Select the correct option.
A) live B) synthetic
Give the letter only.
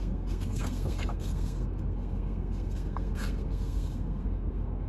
B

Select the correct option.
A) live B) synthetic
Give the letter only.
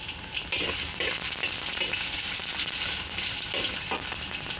A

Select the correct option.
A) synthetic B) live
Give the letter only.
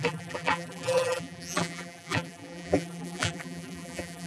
A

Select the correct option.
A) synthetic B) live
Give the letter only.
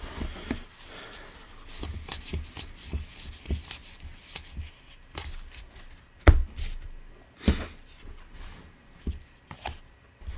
B